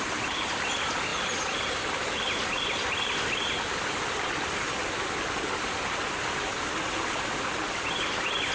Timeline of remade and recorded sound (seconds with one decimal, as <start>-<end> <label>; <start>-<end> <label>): 0.0-8.5 recorded